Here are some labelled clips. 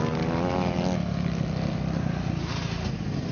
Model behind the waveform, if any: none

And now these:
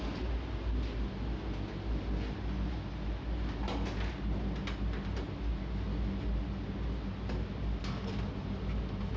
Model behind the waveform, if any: none